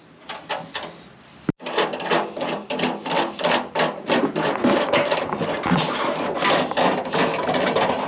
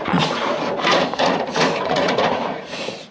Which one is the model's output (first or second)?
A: second